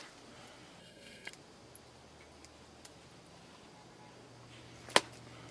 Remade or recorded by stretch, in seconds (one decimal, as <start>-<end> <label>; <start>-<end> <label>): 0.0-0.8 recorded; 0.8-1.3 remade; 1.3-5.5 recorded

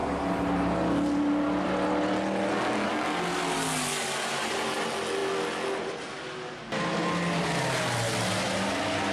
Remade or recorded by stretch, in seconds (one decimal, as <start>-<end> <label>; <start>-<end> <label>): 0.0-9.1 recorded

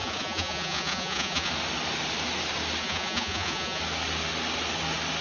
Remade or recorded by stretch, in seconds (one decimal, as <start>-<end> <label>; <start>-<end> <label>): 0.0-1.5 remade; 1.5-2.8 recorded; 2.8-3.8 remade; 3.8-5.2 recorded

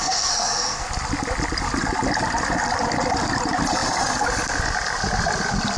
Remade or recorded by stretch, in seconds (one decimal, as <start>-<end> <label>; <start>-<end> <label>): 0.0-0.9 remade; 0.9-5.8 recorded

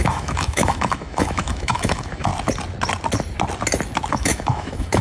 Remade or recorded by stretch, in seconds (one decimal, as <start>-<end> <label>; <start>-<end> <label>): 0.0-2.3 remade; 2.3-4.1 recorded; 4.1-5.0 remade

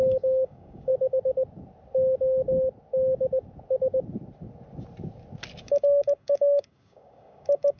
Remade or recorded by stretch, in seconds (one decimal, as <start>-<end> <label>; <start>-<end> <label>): 0.0-0.9 remade; 0.9-5.6 recorded; 5.6-7.8 remade